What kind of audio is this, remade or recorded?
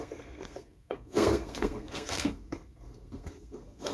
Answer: remade